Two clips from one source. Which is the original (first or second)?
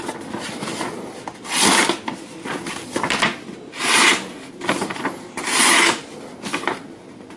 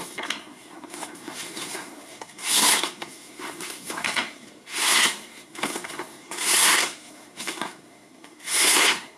first